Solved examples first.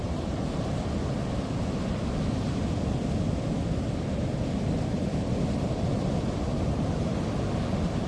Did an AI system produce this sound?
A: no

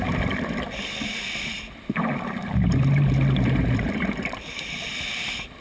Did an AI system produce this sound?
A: no